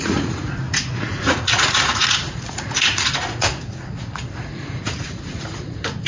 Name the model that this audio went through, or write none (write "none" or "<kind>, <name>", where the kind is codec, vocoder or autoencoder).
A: vocoder, Vocos